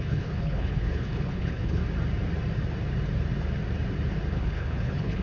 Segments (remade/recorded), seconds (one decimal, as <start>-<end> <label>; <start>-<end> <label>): 0.0-1.8 remade; 1.8-4.3 recorded; 4.3-5.2 remade